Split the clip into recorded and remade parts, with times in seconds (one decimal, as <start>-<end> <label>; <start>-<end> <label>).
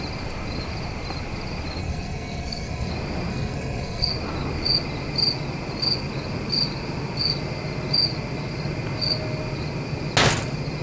0.0-1.8 recorded; 1.8-2.9 remade; 2.9-3.3 recorded; 3.3-4.1 remade; 4.1-10.8 recorded